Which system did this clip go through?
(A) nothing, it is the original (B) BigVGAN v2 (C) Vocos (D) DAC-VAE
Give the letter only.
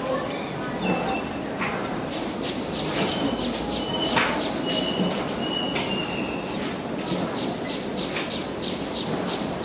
A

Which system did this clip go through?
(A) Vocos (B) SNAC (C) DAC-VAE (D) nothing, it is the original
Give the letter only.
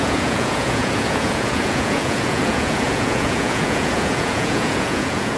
A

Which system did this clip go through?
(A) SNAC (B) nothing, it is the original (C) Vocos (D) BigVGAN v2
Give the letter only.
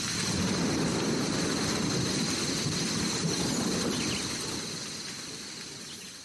D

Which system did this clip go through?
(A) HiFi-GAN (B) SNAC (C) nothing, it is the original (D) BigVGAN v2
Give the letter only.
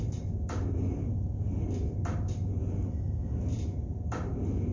C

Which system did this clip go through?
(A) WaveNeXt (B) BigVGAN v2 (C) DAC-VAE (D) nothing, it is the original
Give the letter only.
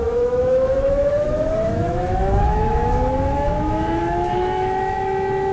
C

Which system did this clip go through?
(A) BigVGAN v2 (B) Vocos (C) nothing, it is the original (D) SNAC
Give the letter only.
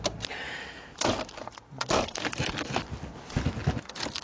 C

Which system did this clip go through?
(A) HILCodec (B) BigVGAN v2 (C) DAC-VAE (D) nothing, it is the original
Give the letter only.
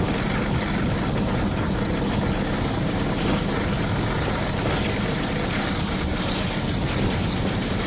D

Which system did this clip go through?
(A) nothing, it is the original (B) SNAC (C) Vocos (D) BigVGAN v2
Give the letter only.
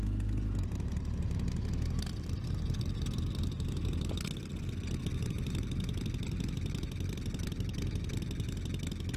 A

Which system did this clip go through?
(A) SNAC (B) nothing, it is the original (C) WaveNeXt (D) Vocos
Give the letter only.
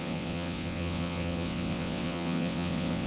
C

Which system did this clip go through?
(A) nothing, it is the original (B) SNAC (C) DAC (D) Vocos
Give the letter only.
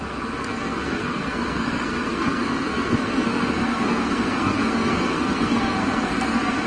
B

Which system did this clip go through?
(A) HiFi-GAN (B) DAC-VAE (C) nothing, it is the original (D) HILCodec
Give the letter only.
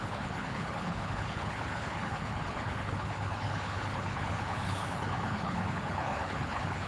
D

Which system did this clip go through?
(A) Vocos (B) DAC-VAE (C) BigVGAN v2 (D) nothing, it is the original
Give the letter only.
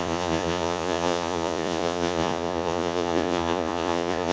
A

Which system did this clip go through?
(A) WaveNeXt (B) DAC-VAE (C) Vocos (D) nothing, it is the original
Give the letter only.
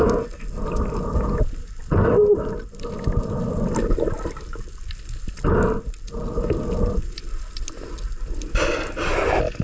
D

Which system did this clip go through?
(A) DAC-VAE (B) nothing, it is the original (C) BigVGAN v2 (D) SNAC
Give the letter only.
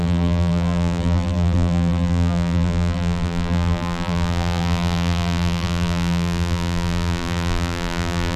C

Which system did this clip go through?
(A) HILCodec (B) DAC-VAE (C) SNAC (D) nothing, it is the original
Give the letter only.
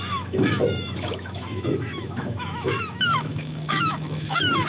B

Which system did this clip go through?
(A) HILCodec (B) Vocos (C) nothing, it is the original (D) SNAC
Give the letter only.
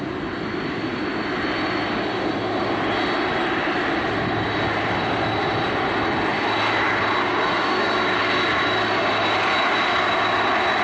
C